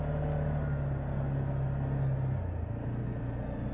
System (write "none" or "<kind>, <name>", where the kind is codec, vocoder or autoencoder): none